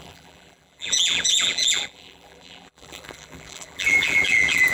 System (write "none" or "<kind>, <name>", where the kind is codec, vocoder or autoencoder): vocoder, BigVGAN v2